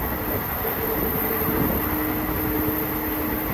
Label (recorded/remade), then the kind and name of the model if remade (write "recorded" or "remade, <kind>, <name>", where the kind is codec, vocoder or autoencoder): recorded